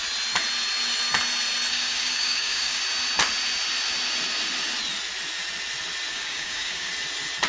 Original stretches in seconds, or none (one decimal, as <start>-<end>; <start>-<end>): 0.0-1.7; 2.8-6.1; 6.9-7.5